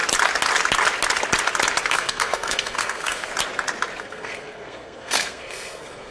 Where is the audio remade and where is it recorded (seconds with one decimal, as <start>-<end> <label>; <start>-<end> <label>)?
0.0-1.9 recorded; 1.9-3.3 remade; 3.3-4.0 recorded; 4.0-6.1 remade